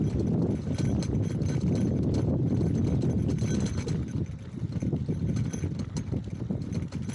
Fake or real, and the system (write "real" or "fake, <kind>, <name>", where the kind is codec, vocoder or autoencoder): real